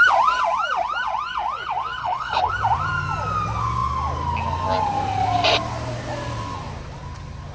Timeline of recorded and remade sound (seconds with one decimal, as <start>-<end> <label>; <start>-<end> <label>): 0.0-2.0 recorded; 2.0-2.5 remade; 2.5-7.5 recorded